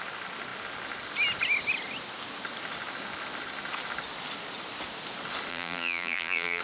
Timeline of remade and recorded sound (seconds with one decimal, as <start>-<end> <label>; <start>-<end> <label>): 0.0-5.5 recorded; 5.5-6.6 remade